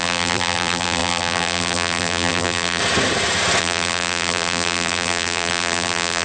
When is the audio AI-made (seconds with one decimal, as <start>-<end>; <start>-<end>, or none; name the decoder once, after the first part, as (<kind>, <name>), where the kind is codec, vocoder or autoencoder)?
0.0-2.8 (vocoder, BigVGAN v2); 3.6-6.2